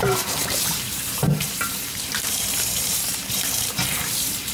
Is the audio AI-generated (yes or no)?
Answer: yes